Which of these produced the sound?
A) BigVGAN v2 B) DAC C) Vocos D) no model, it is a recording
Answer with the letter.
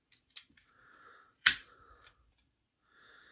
A